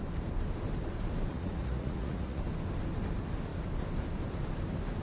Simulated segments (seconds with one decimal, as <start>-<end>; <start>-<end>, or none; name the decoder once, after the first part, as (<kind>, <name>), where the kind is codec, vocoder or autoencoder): 1.3-2.4 (vocoder, Vocos)